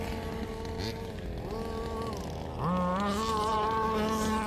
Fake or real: real